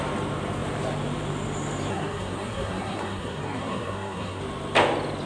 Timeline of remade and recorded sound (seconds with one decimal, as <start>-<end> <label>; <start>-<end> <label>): 0.0-1.9 recorded; 1.9-4.4 remade; 4.4-5.3 recorded